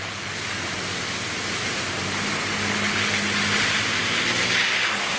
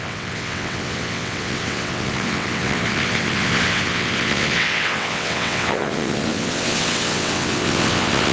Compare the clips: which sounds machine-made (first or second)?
second